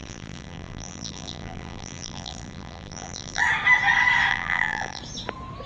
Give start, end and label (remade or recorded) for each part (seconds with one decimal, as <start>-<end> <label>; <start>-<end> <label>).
0.0-3.4 remade; 3.4-4.3 recorded; 4.3-5.0 remade; 5.0-5.7 recorded